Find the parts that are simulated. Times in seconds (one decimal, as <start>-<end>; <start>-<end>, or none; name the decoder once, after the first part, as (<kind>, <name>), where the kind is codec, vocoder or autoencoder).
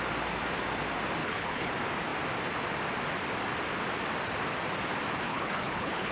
1.2-1.7 (codec, HILCodec); 5.3-6.1